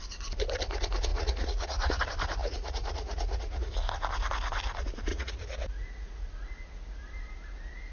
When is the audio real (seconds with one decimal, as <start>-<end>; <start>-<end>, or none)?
0.0-1.1; 2.0-2.4; 3.7-5.1; 6.2-7.9